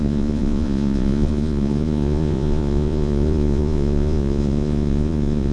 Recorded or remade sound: remade